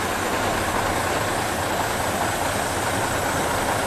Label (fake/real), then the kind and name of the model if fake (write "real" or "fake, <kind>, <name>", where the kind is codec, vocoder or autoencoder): real